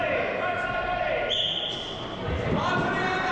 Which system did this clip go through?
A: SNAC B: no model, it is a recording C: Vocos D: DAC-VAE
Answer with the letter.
B